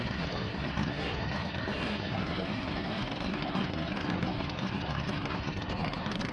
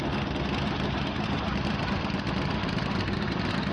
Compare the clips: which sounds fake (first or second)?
first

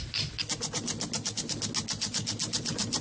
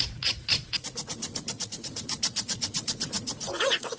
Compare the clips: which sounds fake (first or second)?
second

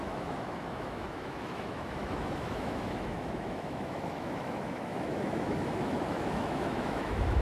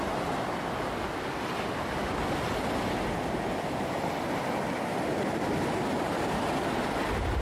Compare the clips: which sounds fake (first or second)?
first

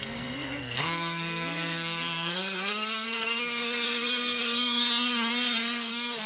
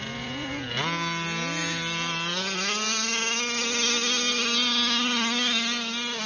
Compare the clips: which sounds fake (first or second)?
first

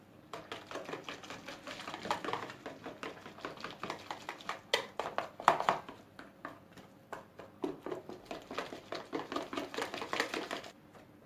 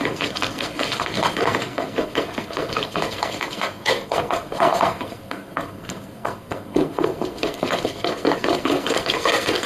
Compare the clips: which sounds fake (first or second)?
second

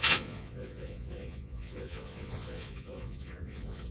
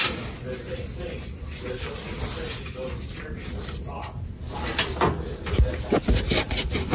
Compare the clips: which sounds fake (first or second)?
first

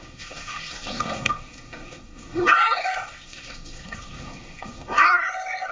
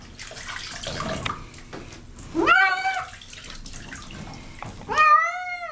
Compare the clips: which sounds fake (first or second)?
first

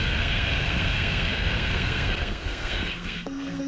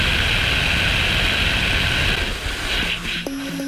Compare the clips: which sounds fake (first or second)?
first